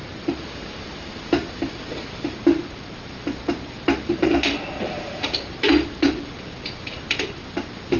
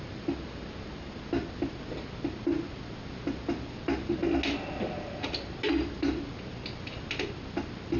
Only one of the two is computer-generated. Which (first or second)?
first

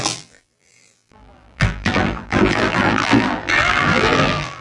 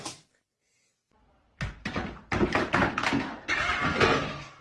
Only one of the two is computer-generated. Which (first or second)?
first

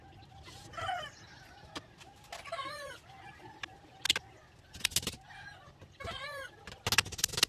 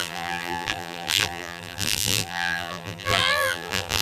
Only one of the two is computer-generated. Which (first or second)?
second